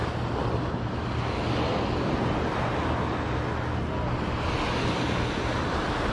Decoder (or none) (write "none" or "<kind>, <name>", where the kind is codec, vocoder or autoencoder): none